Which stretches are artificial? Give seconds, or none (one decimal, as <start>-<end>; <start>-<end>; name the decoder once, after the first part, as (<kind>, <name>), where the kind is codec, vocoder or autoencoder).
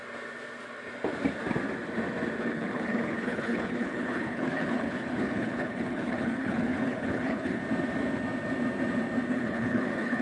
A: 2.4-7.6 (codec, HILCodec); 9.3-10.2